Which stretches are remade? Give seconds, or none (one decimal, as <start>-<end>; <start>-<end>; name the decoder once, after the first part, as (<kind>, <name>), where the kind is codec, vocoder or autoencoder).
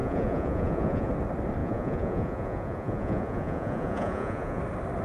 0.0-1.1 (vocoder, Vocos); 1.6-4.6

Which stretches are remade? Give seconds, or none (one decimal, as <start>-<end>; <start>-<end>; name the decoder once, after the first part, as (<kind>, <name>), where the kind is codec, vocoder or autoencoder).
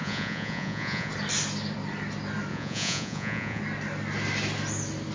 0.0-1.1 (vocoder, Vocos); 2.5-3.6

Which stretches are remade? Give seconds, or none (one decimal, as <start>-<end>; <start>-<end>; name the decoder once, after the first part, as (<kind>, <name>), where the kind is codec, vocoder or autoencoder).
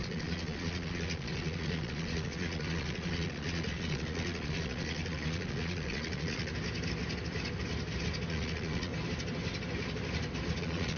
0.0-6.5 (vocoder, Vocos); 8.3-8.9; 10.6-11.0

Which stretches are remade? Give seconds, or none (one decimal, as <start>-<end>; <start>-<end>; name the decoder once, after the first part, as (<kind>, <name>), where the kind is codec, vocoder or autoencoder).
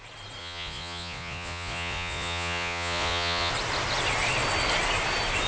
0.4-3.5 (vocoder, Vocos)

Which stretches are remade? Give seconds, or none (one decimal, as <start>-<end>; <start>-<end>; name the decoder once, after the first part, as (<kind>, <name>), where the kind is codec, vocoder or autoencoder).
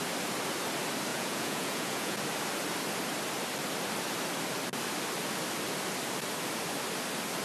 1.1-2.2 (vocoder, Vocos)